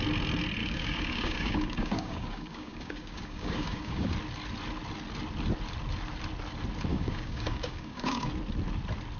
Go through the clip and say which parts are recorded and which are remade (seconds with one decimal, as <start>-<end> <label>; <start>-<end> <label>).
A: 0.0-0.6 recorded; 0.6-4.1 remade; 4.1-6.9 recorded; 6.9-8.3 remade; 8.3-9.2 recorded